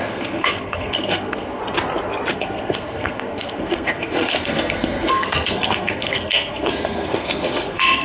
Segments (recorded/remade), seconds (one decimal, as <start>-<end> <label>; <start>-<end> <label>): 0.0-1.6 remade; 1.6-2.3 recorded; 2.3-8.0 remade